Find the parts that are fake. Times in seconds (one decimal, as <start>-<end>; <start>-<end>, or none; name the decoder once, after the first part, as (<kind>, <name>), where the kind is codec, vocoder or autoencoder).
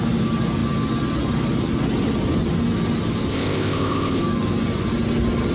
3.3-4.2 (codec, ZipCodec)